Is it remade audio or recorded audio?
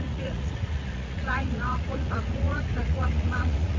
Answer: remade